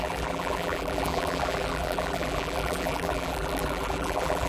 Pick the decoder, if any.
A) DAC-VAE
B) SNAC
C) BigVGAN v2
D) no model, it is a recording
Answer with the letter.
C